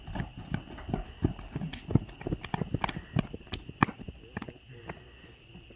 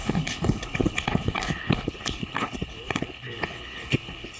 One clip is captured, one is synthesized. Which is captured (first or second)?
first